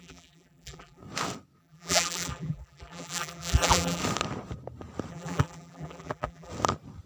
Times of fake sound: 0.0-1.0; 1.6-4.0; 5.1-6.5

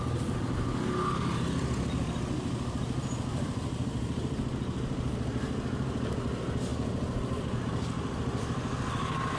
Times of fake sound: none

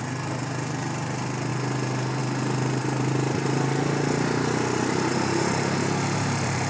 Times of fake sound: 5.1-6.7

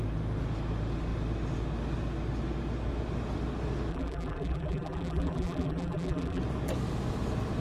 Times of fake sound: 3.9-6.4

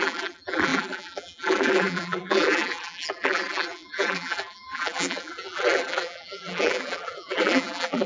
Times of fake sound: 0.0-8.1